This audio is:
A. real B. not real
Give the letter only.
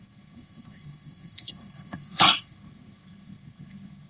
B